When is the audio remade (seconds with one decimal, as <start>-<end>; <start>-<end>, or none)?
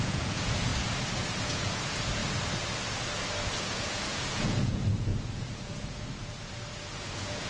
0.0-0.7; 1.4-2.2; 3.6-7.5